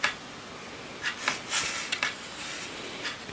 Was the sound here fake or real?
real